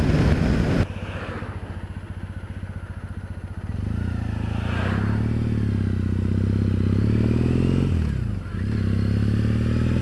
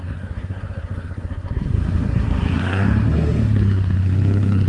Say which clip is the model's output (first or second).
second